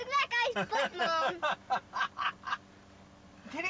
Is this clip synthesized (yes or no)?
no